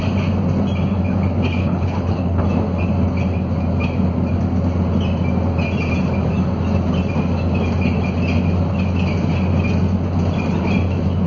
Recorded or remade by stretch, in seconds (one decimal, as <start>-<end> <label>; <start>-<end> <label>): 0.0-1.6 recorded; 1.6-2.4 remade; 2.4-11.3 recorded